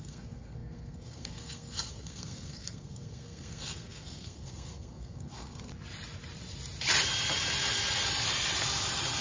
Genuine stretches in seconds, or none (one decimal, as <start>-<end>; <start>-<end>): 5.7-9.2

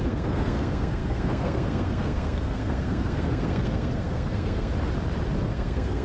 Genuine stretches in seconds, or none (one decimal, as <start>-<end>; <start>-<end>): 4.7-5.4

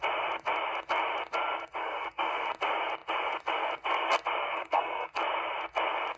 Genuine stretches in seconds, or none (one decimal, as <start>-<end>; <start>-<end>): 0.0-1.8; 2.3-4.4; 5.2-6.2

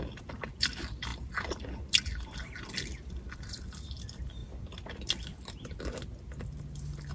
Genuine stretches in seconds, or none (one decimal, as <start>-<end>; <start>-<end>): 0.0-7.1